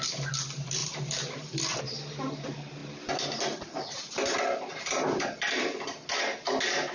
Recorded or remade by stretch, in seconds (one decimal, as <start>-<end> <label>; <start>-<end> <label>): 0.0-0.8 recorded; 0.8-2.1 remade; 2.1-2.8 recorded; 2.8-6.2 remade; 6.2-6.9 recorded